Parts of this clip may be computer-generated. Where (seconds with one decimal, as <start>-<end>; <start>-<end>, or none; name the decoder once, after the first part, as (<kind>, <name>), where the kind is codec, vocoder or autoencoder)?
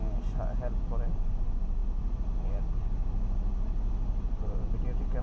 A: none